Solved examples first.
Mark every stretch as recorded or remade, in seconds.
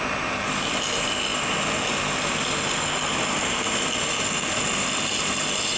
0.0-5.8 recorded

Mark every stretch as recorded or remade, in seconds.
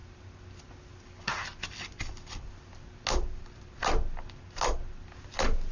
0.0-5.7 recorded